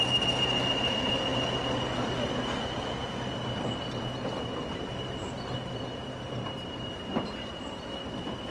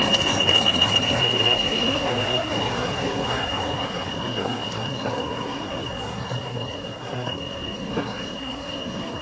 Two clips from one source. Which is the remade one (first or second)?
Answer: second